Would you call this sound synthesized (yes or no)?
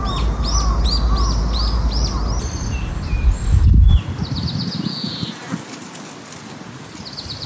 no